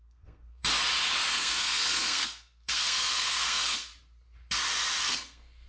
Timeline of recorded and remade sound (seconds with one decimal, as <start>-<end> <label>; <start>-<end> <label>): 0.0-0.6 remade; 0.6-1.3 recorded; 1.3-3.9 remade; 3.9-5.0 recorded; 5.0-5.7 remade